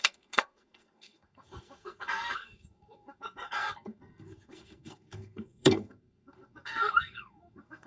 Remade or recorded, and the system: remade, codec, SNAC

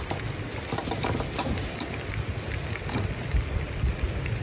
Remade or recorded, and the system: recorded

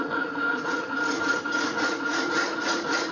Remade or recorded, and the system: remade, vocoder, Vocos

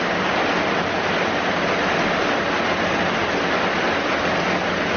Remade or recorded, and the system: recorded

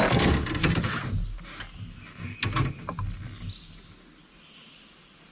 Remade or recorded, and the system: recorded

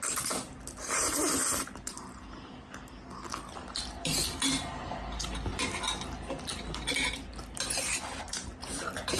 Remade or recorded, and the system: recorded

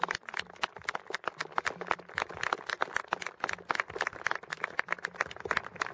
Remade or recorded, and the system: recorded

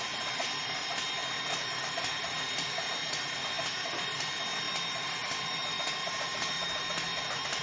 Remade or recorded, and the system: recorded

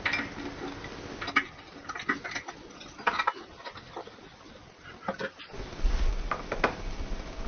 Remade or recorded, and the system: recorded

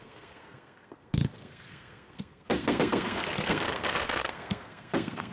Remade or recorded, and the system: remade, codec, SNAC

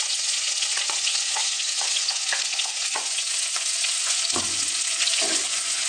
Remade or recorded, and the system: remade, vocoder, Vocos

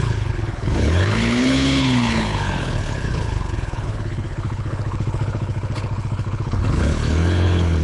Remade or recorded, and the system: remade, codec, HILCodec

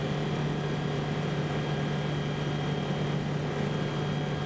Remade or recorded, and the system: recorded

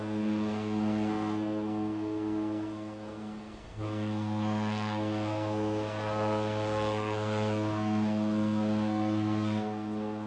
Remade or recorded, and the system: remade, codec, SNAC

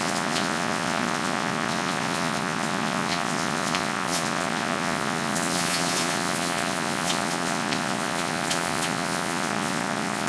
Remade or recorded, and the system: remade, vocoder, Vocos